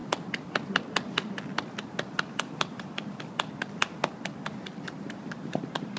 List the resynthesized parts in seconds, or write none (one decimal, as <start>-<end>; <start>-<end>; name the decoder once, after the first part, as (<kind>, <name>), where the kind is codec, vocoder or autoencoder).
none